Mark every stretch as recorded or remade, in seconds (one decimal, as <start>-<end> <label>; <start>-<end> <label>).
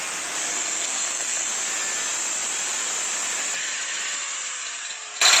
0.0-0.5 recorded; 0.5-1.5 remade; 1.5-5.4 recorded